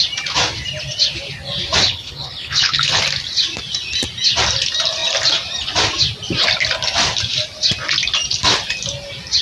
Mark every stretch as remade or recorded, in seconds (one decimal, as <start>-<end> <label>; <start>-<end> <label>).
0.0-1.8 recorded; 1.8-3.0 remade; 3.0-9.4 recorded